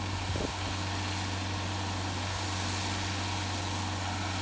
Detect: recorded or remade recorded